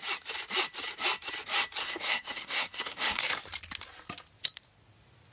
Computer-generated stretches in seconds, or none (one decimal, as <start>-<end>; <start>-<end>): 1.8-3.2